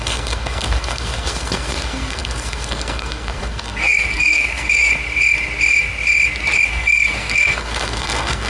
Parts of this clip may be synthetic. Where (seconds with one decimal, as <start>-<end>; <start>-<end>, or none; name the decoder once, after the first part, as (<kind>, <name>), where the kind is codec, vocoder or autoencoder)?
0.0-4.9 (codec, SNAC); 6.7-8.5